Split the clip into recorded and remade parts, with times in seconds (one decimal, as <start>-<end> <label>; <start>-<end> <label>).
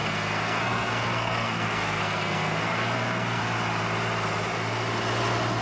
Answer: 0.0-3.4 remade; 3.4-5.6 recorded